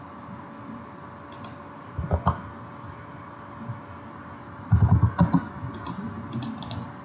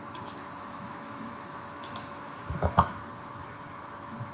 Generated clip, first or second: second